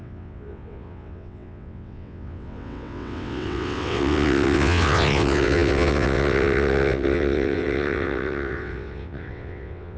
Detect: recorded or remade remade